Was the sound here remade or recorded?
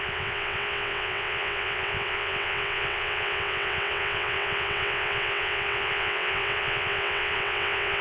remade